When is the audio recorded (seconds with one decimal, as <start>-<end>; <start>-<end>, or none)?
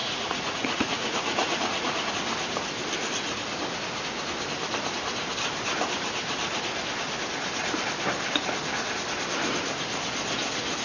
2.1-10.8